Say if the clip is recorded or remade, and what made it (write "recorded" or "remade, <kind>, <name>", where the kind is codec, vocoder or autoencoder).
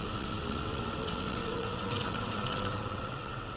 remade, vocoder, WaveNeXt